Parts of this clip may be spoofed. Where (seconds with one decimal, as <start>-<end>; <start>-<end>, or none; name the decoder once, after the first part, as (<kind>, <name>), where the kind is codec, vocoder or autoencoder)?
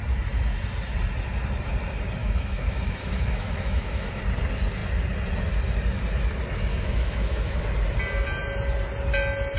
2.2-4.2 (autoencoder, DAC-VAE); 6.7-7.6